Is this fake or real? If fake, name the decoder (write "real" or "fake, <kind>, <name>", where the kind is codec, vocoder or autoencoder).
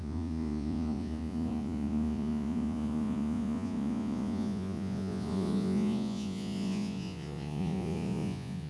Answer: fake, vocoder, Vocos